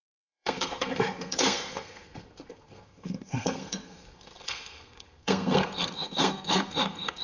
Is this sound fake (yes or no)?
yes